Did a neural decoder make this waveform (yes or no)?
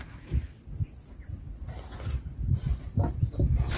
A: no